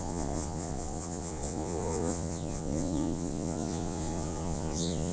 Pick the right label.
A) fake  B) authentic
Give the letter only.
A